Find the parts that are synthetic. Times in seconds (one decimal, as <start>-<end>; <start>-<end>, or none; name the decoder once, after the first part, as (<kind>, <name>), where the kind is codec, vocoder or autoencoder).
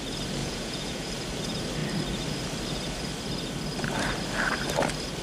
0.4-1.1 (vocoder, Vocos)